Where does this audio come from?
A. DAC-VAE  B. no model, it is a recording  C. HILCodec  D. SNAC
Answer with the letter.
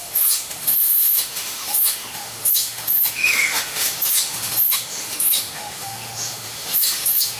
A